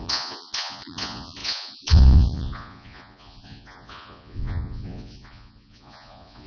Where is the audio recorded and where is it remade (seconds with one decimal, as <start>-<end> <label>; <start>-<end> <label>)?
0.0-6.5 remade